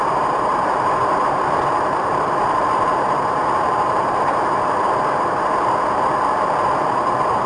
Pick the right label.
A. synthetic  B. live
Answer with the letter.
A